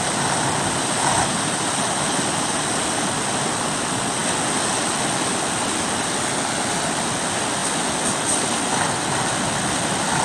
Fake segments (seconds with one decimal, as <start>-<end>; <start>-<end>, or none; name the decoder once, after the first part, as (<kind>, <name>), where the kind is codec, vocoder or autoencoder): none